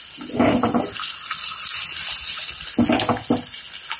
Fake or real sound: real